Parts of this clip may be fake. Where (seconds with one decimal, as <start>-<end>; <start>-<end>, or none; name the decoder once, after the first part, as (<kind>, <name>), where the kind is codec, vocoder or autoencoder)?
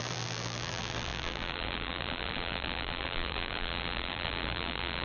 0.0-5.0 (vocoder, BigVGAN v2)